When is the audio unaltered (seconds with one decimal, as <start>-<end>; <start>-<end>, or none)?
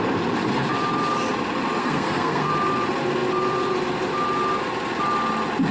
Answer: 0.0-1.8; 2.5-5.7